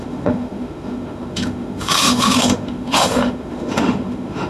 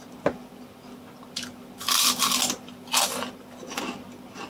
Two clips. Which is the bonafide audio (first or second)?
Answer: second